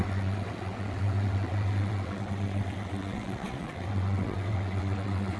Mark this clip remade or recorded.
remade